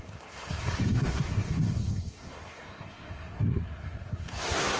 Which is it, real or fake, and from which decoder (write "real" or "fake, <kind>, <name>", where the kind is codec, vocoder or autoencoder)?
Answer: fake, codec, SNAC